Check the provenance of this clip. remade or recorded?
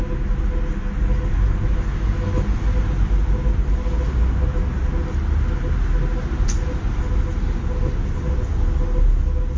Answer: recorded